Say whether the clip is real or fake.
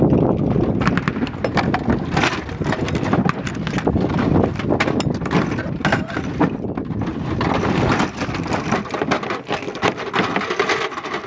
real